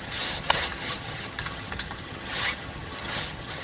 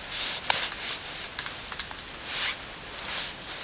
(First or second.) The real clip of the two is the second